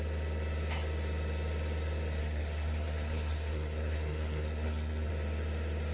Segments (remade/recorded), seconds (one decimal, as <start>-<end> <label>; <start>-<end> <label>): 0.0-2.2 recorded; 2.2-5.1 remade; 5.1-5.9 recorded